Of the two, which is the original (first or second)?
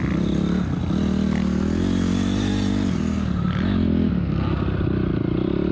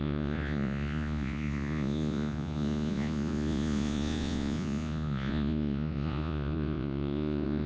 first